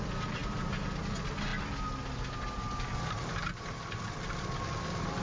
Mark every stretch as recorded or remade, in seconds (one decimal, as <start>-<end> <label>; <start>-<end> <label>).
0.0-5.2 recorded